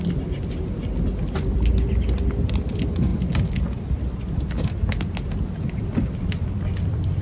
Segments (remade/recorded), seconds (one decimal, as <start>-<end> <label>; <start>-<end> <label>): 0.0-7.2 recorded